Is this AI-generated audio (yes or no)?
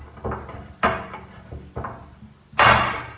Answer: no